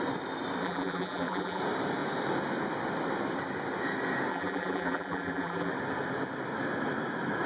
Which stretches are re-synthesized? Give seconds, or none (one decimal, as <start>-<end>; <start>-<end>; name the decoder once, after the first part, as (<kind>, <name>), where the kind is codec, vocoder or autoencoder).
0.6-1.6 (vocoder, BigVGAN v2); 4.3-5.7

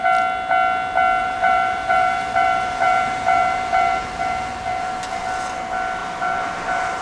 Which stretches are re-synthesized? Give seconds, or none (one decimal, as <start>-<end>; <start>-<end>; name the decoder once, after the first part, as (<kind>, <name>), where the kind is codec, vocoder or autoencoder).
1.2-5.2 (vocoder, BigVGAN v2); 6.0-7.0

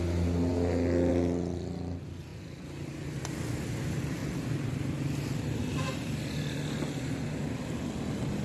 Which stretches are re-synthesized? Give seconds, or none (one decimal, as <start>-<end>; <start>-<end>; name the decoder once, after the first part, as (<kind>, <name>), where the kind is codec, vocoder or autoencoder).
2.3-3.1 (vocoder, BigVGAN v2); 4.2-6.5

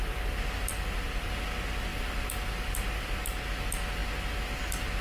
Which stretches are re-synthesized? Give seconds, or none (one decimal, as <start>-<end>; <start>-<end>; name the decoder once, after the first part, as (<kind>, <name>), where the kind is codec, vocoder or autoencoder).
0.7-1.3 (vocoder, BigVGAN v2); 1.9-3.2

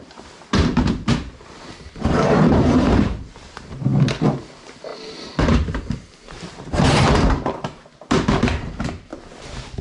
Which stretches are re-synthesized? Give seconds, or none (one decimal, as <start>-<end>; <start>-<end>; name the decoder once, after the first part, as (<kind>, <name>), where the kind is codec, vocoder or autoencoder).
0.0-3.9 (vocoder, BigVGAN v2); 4.4-4.9; 5.5-9.8

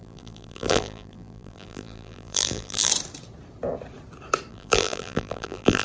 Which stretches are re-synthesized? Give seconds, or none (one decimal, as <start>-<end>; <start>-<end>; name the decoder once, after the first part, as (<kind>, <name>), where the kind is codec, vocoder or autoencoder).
0.0-2.9 (vocoder, BigVGAN v2); 4.5-5.8

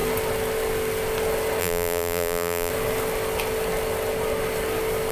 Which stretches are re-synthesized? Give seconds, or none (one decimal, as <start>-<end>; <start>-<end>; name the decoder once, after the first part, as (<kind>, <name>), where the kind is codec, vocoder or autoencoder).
1.6-2.7 (vocoder, BigVGAN v2)